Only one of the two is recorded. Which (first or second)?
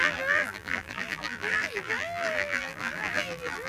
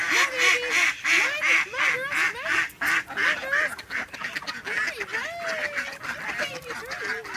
second